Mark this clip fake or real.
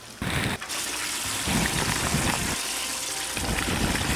real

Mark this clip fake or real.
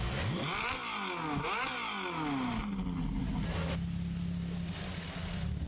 real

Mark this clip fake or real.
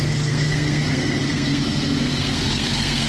fake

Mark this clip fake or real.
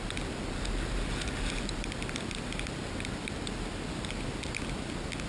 real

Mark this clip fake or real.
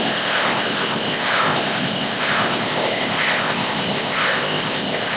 fake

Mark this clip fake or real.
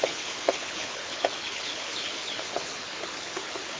fake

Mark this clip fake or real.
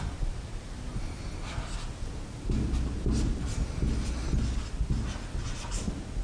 real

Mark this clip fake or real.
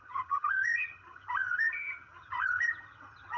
fake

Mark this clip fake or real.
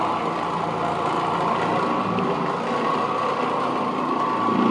real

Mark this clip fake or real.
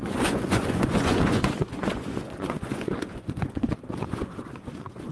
fake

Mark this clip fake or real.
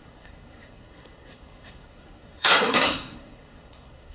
fake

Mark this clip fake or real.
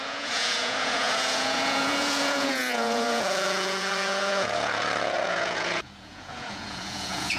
fake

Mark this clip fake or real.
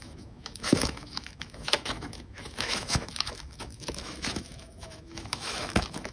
fake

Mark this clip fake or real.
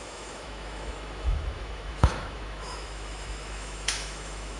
fake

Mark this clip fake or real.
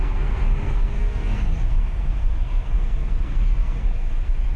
fake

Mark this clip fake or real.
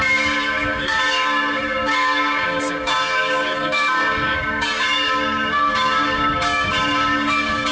fake